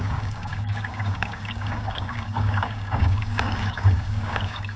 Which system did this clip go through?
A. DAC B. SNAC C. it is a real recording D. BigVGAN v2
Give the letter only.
A